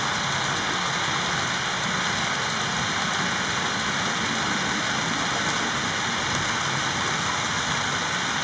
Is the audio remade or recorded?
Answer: recorded